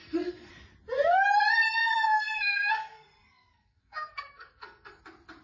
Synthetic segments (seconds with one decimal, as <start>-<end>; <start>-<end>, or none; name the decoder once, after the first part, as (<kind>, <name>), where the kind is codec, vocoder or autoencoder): 0.0-0.5 (codec, SNAC); 1.8-5.0